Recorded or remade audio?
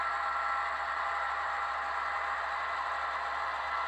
recorded